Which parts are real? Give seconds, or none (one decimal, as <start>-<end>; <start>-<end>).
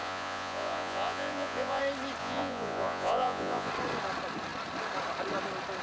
1.8-2.2; 3.7-5.8